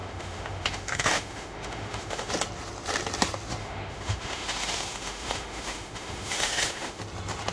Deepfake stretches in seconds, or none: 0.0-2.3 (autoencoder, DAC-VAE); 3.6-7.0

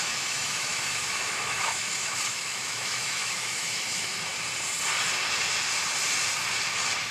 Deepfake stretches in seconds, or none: 0.0-4.3 (autoencoder, DAC-VAE)

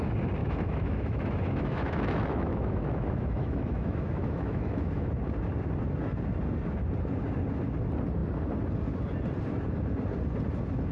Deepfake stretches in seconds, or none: 0.4-5.1 (autoencoder, DAC-VAE)

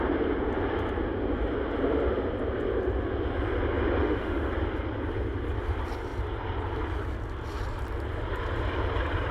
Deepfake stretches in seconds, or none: 4.0-4.5 (autoencoder, DAC-VAE)

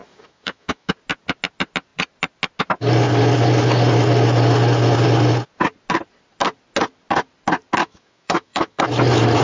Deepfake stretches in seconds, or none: 0.0-0.9 (autoencoder, DAC-VAE); 7.8-8.8

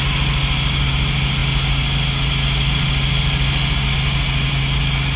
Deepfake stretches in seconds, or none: none

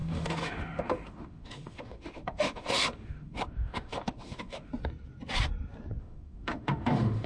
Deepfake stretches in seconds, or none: 0.0-4.7 (autoencoder, DAC-VAE); 6.0-7.3